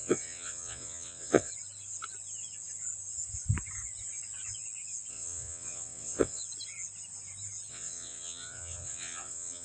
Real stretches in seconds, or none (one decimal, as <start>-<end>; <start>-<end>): 1.5-5.1; 6.4-7.7